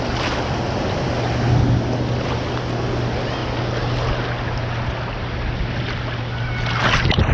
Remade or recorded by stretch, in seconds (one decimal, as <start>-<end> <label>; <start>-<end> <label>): 0.0-7.3 recorded